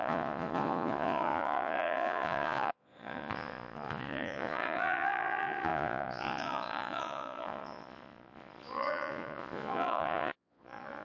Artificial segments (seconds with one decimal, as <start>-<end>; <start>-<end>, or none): 0.0-11.0